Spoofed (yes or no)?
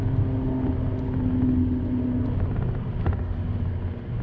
no